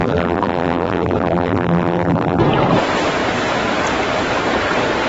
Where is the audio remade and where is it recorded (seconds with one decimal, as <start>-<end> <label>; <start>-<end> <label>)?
0.0-2.4 remade; 2.4-5.1 recorded